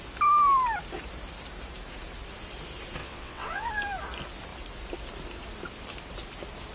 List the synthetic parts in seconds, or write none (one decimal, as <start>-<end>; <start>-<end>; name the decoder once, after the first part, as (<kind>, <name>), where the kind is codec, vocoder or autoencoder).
3.0-3.7 (vocoder, WaveNeXt)

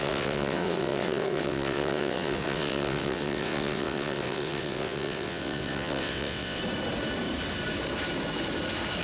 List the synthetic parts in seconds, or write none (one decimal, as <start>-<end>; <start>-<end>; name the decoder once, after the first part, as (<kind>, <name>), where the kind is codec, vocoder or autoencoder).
0.0-6.6 (vocoder, WaveNeXt)

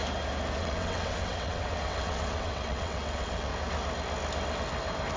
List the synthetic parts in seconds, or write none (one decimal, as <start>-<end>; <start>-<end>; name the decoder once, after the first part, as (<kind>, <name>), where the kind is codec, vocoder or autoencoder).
0.6-3.5 (vocoder, WaveNeXt)

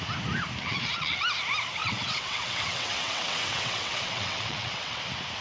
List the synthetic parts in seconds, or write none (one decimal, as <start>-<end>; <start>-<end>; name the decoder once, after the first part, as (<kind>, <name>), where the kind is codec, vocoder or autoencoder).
0.6-1.2 (vocoder, WaveNeXt); 1.8-5.0